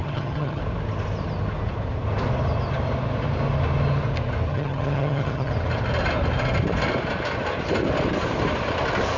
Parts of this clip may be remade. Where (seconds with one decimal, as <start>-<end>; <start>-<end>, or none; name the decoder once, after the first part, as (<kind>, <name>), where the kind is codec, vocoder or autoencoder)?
0.0-0.6 (vocoder, HiFi-GAN); 4.5-5.5